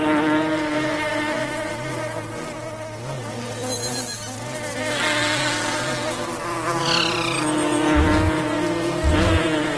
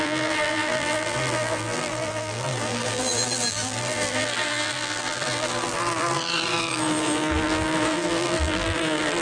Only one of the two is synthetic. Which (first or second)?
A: second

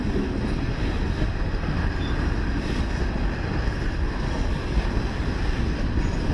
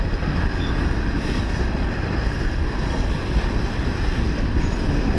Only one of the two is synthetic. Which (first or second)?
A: second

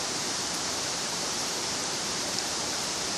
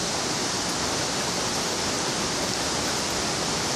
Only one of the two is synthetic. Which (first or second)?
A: first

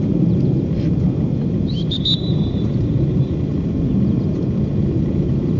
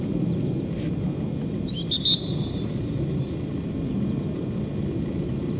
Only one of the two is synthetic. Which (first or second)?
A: first